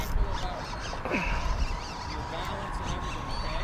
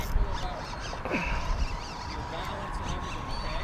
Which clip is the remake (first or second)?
second